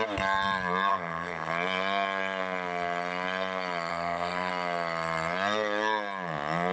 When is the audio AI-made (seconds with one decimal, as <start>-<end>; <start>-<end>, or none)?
0.9-1.5; 3.9-4.5